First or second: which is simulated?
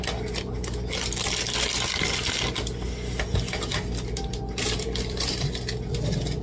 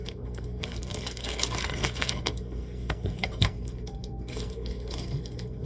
second